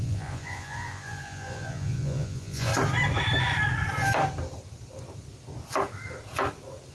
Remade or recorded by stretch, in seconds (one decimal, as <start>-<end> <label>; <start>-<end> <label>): 0.0-2.7 remade; 2.7-6.9 recorded